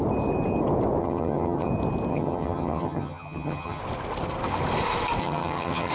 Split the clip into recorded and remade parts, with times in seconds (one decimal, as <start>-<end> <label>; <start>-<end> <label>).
0.0-1.0 recorded; 1.0-1.7 remade; 1.7-2.1 recorded; 2.1-3.8 remade; 3.8-5.2 recorded; 5.2-5.9 remade

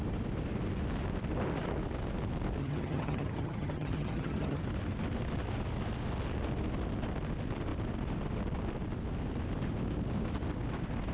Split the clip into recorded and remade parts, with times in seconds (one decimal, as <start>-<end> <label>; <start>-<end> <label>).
0.0-2.6 recorded; 2.6-4.6 remade; 4.6-11.1 recorded

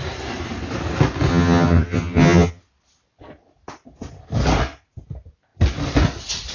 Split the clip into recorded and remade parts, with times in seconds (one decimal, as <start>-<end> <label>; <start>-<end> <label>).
0.0-1.3 recorded; 1.3-2.6 remade; 2.6-6.5 recorded